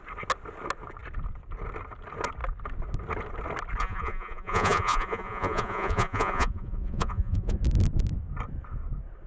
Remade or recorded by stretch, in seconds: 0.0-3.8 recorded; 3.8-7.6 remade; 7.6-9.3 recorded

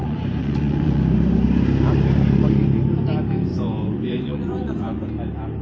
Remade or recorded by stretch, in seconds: 0.0-1.0 remade; 1.0-3.5 recorded; 3.5-5.1 remade; 5.1-5.6 recorded

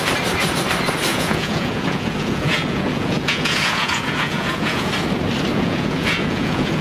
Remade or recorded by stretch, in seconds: 0.0-1.1 recorded; 1.1-4.9 remade; 4.9-5.5 recorded; 5.5-6.8 remade